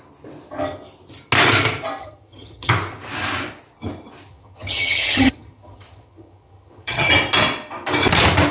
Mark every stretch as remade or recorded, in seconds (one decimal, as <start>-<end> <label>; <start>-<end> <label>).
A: 0.0-2.0 recorded; 2.0-2.7 remade; 2.7-4.3 recorded; 4.3-7.1 remade; 7.1-8.5 recorded